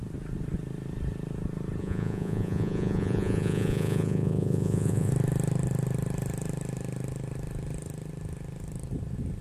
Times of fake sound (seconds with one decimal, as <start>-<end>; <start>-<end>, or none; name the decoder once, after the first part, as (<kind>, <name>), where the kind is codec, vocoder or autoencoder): 1.8-5.1 (vocoder, Vocos)